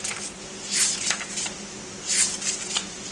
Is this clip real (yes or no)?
yes